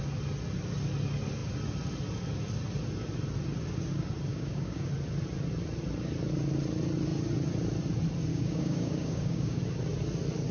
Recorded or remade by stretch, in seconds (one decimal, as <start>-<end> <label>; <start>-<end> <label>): 0.0-4.3 recorded; 4.3-4.9 remade; 4.9-8.3 recorded; 8.3-9.6 remade; 9.6-10.5 recorded